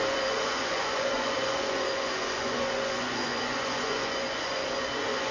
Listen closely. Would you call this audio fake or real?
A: fake